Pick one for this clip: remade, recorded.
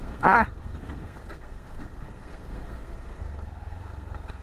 remade